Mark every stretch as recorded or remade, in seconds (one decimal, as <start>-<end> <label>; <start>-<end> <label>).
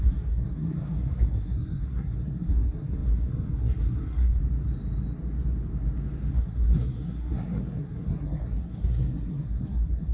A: 0.0-4.4 remade; 4.4-6.3 recorded; 6.3-10.1 remade